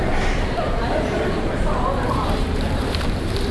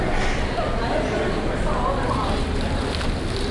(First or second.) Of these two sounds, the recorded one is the second